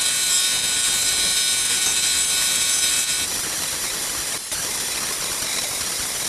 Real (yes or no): yes